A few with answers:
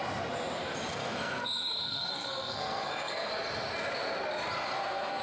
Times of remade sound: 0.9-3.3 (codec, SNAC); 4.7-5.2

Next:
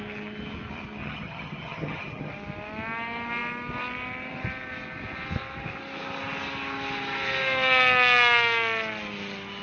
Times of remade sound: 1.0-2.3 (vocoder, HiFi-GAN)

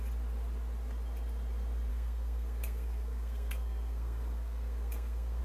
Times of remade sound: 1.9-5.4 (codec, SNAC)

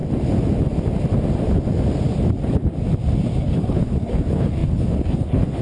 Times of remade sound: 3.4-5.6 (codec, HILCodec)